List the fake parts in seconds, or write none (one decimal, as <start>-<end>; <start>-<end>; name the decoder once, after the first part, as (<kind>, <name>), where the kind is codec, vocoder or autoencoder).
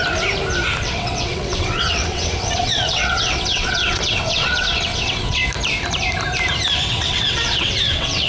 0.8-5.4 (vocoder, WaveNeXt); 6.9-8.3